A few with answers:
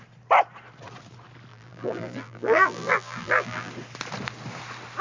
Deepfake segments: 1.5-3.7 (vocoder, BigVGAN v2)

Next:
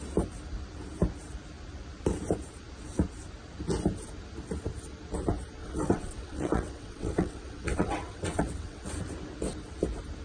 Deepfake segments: 5.6-8.9 (vocoder, WaveNeXt)

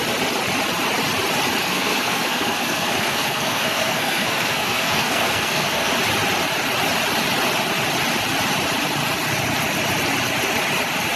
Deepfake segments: 1.6-5.9 (codec, SNAC)

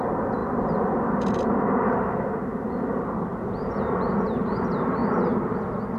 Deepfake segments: none

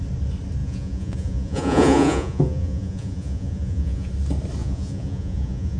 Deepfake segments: 0.6-4.1 (vocoder, Vocos); 4.6-5.8

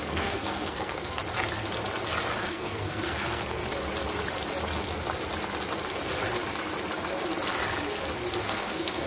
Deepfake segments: 0.0-1.2 (codec, SNAC); 2.4-3.6; 8.4-9.1

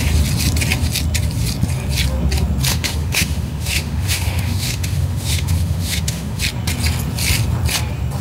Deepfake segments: 2.7-6.4 (autoencoder, DAC-VAE)